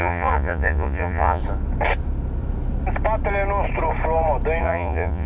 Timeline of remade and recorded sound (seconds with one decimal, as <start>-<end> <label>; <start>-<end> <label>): 0.0-1.4 remade; 1.4-4.6 recorded; 4.6-5.3 remade